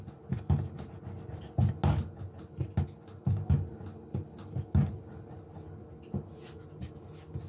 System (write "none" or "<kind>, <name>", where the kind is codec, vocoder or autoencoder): none